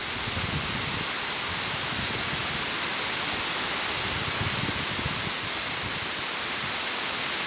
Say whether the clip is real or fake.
real